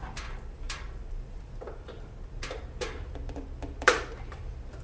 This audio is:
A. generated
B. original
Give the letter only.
A